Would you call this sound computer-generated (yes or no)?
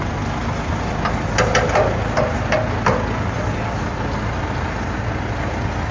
no